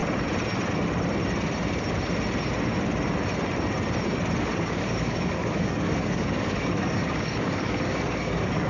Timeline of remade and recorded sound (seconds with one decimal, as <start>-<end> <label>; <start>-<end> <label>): 0.0-4.4 recorded; 4.4-8.7 remade